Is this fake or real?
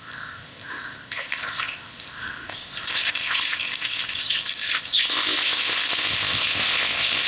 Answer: fake